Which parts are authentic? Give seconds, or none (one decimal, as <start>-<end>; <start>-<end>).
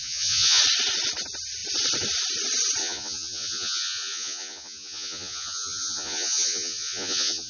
0.6-2.8